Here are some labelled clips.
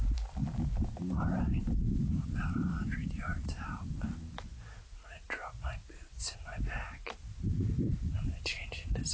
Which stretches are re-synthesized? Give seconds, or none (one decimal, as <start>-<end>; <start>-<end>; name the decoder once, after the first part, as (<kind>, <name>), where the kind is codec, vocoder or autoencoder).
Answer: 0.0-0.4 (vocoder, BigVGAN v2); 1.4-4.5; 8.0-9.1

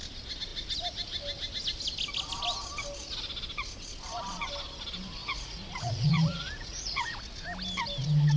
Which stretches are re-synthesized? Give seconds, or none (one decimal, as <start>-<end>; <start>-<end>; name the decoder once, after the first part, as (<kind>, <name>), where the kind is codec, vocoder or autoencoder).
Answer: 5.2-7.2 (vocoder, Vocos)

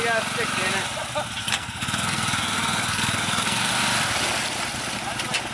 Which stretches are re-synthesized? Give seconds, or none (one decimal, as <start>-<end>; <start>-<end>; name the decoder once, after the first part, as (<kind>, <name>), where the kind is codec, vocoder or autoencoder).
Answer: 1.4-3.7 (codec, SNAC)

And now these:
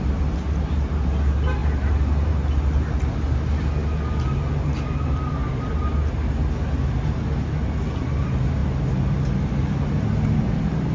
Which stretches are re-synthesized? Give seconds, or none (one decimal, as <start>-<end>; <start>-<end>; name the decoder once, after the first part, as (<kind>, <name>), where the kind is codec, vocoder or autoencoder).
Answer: none